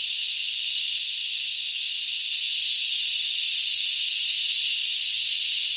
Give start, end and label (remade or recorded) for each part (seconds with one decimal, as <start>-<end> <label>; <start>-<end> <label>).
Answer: 0.0-0.4 recorded; 0.4-0.9 remade; 0.9-3.6 recorded; 3.6-4.1 remade; 4.1-5.8 recorded